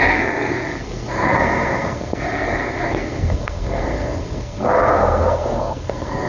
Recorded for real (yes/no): no